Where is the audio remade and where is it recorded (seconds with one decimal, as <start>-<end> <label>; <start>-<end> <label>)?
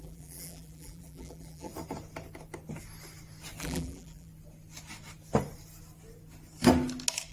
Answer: 0.0-1.7 remade; 1.7-3.6 recorded; 3.6-4.3 remade; 4.3-7.3 recorded